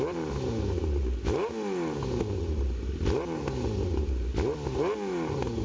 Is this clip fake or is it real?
real